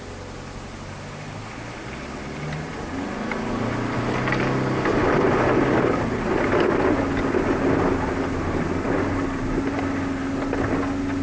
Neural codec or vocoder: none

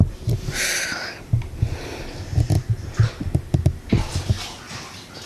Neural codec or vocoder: none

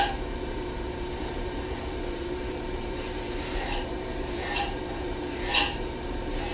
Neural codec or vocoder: vocoder, BigVGAN v2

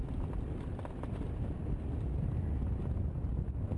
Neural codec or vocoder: vocoder, BigVGAN v2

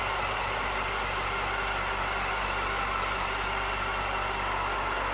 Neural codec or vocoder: none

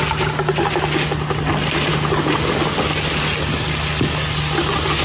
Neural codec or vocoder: none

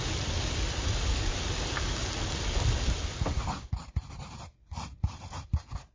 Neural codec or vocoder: none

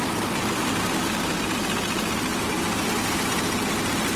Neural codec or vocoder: none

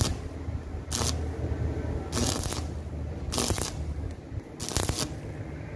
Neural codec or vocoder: none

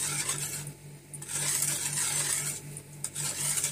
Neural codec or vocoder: none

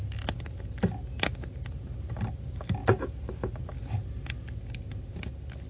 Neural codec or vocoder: none